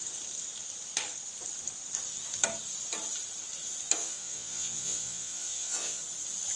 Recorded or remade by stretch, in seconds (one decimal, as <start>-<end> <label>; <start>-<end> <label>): 0.0-4.0 recorded; 4.0-6.0 remade; 6.0-6.6 recorded